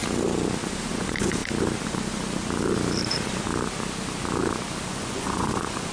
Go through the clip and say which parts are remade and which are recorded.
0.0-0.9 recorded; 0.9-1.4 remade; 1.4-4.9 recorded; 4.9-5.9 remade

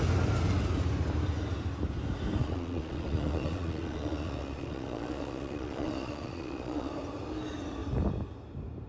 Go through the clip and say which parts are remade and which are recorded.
0.0-2.4 recorded; 2.4-6.9 remade; 6.9-8.9 recorded

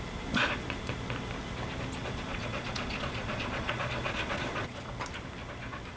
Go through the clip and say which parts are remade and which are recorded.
0.0-2.0 recorded; 2.0-4.9 remade; 4.9-6.0 recorded

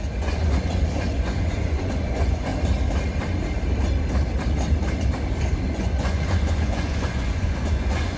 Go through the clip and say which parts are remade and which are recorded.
0.0-2.5 remade; 2.5-5.6 recorded; 5.6-8.2 remade

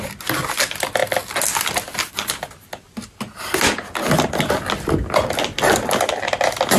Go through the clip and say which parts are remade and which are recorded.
0.0-6.8 recorded

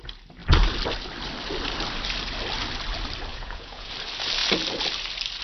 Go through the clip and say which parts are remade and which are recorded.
0.0-3.3 recorded; 3.3-3.9 remade; 3.9-5.4 recorded

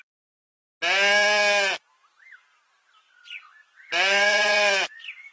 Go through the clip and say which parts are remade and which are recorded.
0.0-3.6 recorded; 3.6-5.3 remade

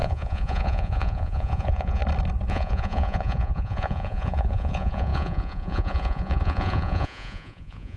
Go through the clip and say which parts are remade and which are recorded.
0.0-2.0 remade; 2.0-2.5 recorded; 2.5-8.0 remade